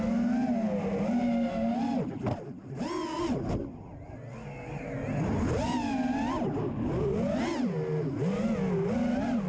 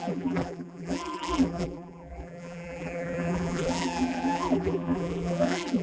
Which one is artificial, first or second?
second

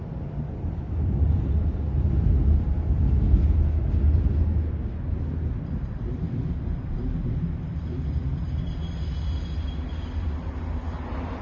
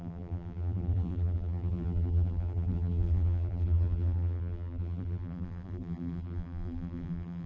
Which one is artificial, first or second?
second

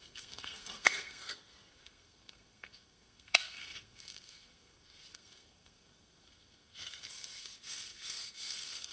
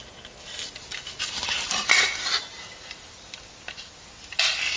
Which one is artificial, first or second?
first